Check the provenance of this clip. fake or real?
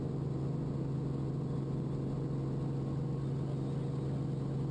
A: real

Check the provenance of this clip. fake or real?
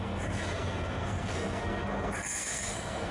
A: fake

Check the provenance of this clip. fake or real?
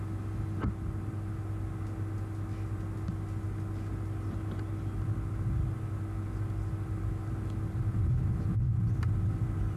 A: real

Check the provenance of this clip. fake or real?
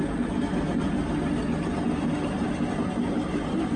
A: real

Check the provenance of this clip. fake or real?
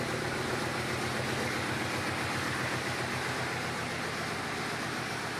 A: real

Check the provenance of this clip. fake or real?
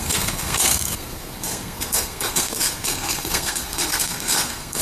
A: fake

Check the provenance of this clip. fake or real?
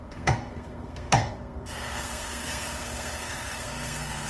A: fake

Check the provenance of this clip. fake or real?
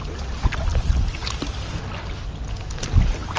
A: real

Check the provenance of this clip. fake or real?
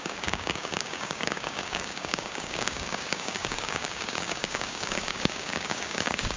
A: fake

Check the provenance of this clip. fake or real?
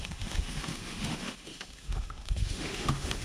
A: fake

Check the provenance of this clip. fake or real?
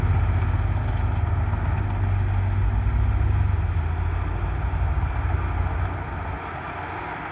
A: real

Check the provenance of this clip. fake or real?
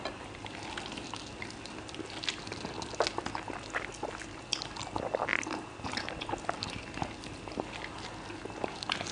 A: real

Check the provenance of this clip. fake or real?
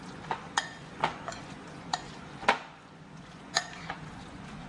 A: fake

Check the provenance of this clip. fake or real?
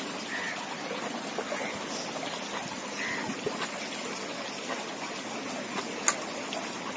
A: real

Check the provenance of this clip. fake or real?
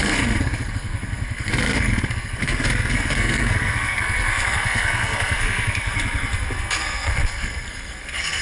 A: fake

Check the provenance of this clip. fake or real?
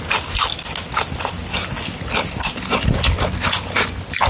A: real